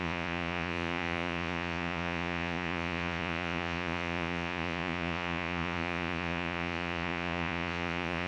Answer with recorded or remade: remade